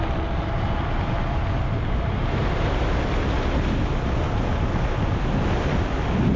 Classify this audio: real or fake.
real